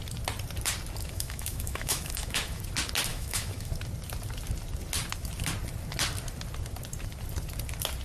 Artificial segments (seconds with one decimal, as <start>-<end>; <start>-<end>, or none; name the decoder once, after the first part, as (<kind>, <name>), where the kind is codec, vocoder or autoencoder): 1.0-2.6 (autoencoder, DAC-VAE); 3.1-3.7